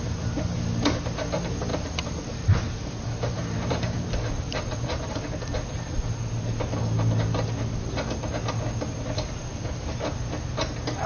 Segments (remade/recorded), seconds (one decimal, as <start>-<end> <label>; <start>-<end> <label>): 0.0-1.7 recorded; 1.7-5.2 remade; 5.2-11.1 recorded